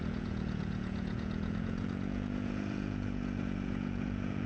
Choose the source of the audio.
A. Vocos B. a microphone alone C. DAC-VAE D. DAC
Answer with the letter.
A